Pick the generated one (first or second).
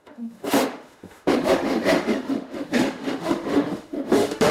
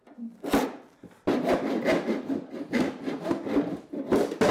first